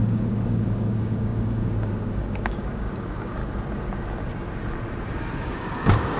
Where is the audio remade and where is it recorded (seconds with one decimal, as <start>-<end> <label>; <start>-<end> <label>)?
0.0-3.4 remade; 3.4-5.4 recorded; 5.4-6.2 remade